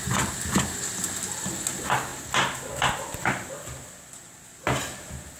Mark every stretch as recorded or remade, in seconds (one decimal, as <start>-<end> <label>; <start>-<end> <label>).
0.0-5.4 recorded